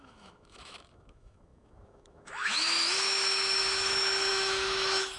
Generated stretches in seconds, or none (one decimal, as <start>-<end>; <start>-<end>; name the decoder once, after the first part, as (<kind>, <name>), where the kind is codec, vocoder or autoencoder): 0.0-5.2 (autoencoder, DAC-VAE)